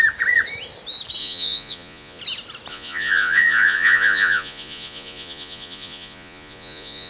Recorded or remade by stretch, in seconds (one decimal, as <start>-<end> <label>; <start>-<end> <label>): 0.0-1.2 recorded; 1.2-2.2 remade; 2.2-2.7 recorded; 2.7-7.1 remade